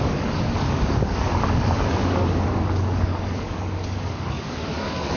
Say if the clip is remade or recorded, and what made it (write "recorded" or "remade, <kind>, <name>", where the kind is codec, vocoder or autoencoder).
remade, codec, DAC